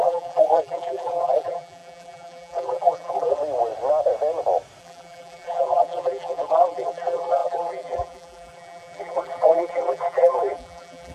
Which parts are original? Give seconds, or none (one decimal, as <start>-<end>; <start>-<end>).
3.4-4.8